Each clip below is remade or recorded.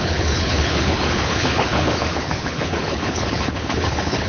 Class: remade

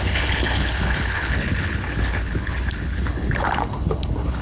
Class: remade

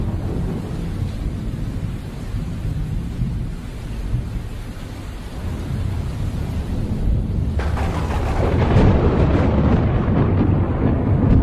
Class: recorded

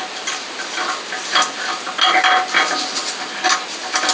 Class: recorded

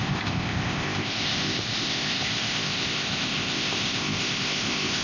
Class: remade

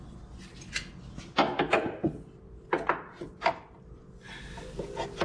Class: recorded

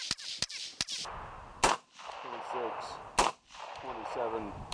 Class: recorded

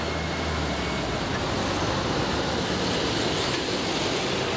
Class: recorded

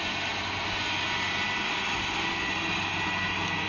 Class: recorded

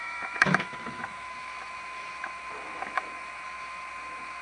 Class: remade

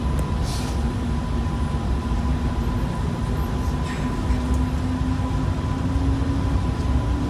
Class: recorded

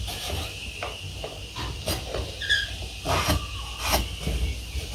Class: recorded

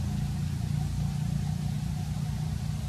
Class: recorded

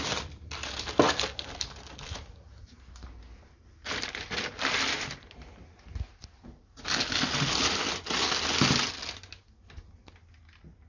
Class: recorded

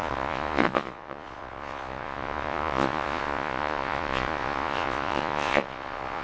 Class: remade